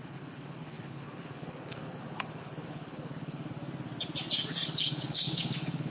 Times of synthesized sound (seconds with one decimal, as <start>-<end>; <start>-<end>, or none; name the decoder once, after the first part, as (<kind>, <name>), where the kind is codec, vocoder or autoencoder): 0.0-3.5 (codec, HILCodec); 4.5-5.9